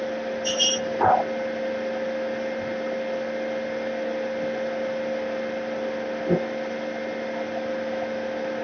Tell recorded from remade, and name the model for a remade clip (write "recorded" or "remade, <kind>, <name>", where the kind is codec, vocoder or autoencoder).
recorded